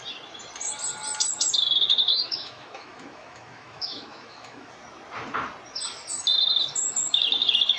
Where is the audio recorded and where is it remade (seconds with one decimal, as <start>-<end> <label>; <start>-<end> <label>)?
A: 0.0-2.1 recorded; 2.1-4.7 remade; 4.7-7.8 recorded